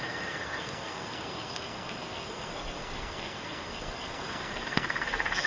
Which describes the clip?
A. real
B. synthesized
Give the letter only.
B